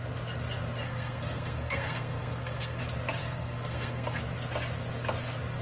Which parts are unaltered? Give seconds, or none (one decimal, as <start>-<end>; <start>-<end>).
0.0-0.8; 2.8-3.2; 4.2-5.6